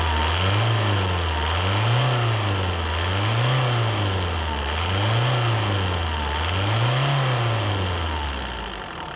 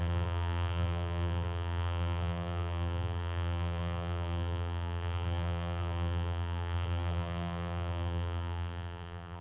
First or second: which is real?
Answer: first